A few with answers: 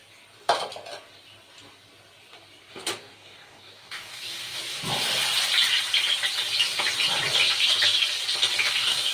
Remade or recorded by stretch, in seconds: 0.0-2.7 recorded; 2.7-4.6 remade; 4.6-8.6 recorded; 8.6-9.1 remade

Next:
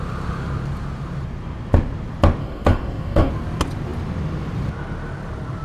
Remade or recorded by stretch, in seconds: 0.0-2.4 recorded; 2.4-3.3 remade; 3.3-5.6 recorded

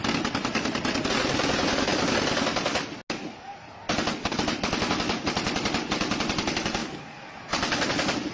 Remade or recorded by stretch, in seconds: 0.0-8.3 recorded

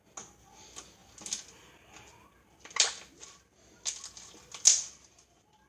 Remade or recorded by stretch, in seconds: 0.0-5.7 recorded

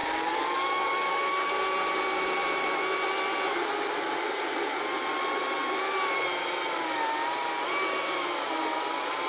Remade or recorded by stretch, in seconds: 0.0-1.5 remade; 1.5-9.3 recorded

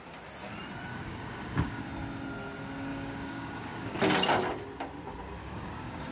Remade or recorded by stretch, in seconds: 0.0-0.9 recorded; 0.9-1.8 remade; 1.8-2.9 recorded; 2.9-4.0 remade; 4.0-5.4 recorded; 5.4-6.1 remade

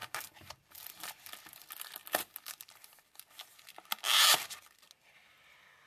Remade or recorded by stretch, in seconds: 0.0-5.9 recorded